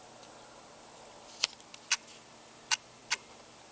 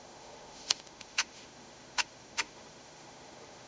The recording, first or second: first